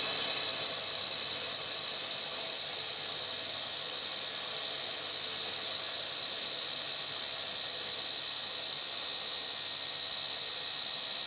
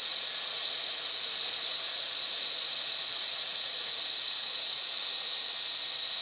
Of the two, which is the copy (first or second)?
second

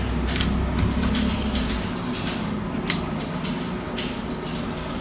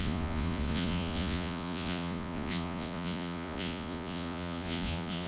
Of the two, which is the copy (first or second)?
second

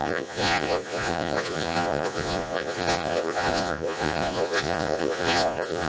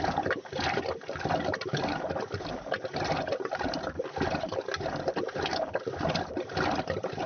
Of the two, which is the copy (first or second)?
first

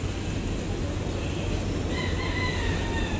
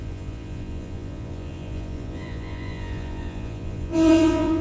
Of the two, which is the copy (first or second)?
second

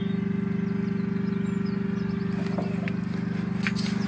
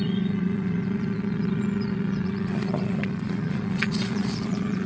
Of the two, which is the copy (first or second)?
second